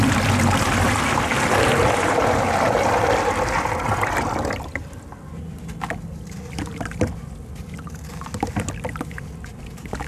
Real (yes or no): yes